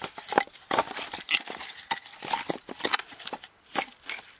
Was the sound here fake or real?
real